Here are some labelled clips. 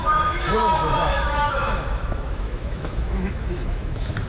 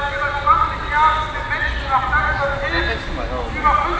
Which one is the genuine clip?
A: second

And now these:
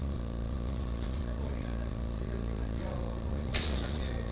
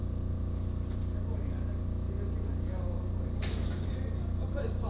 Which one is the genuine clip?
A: second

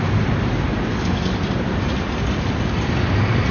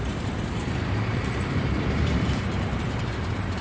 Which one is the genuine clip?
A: first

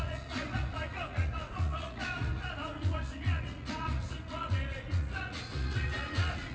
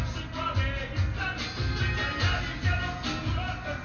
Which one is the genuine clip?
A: second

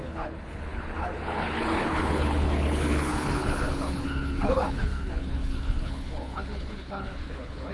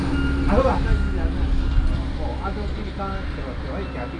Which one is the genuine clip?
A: second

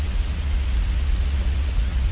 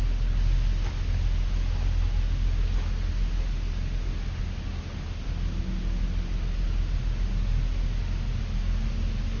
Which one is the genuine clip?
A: second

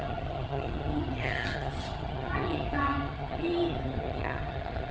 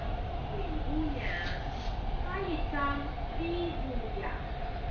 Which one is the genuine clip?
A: second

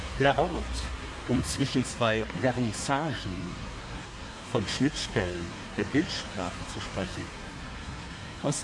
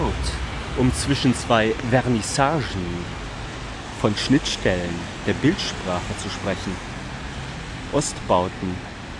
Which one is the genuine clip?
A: second